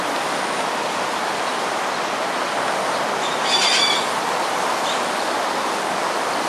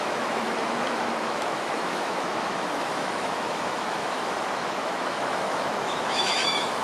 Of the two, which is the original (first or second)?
first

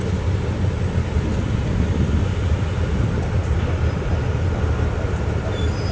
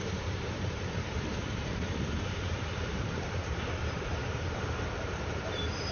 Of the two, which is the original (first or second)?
first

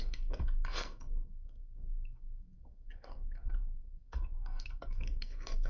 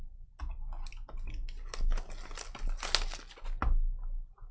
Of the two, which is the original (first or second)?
second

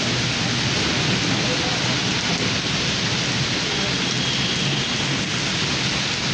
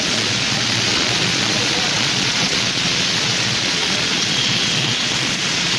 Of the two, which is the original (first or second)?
first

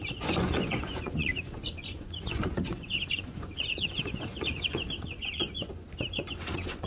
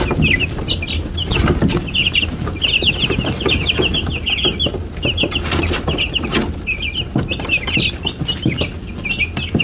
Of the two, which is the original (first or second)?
second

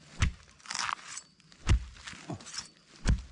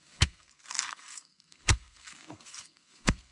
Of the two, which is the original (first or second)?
first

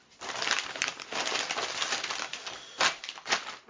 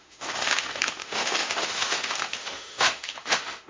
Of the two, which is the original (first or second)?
first